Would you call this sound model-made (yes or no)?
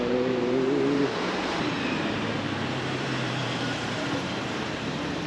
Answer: yes